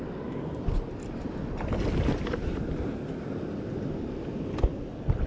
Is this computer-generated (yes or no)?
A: no